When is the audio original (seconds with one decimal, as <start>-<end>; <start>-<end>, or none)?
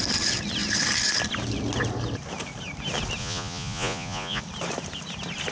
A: 0.0-3.2; 4.4-5.5